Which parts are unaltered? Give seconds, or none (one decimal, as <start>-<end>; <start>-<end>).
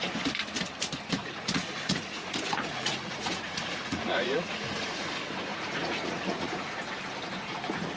0.0-1.2; 5.1-5.5; 6.8-8.0